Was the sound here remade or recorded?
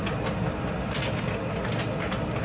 recorded